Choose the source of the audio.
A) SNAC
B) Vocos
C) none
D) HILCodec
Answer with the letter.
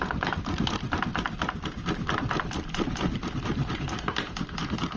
C